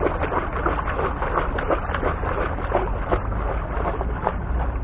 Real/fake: real